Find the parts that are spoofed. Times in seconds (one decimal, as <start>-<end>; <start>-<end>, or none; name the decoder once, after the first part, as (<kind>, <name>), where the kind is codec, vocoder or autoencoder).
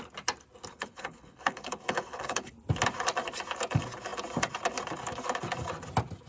0.7-2.5 (codec, HILCodec)